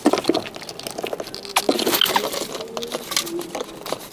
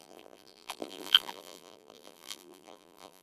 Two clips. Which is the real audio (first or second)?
first